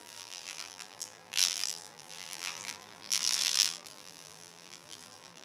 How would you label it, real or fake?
fake